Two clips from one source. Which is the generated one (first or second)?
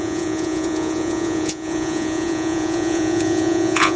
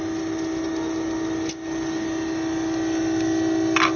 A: first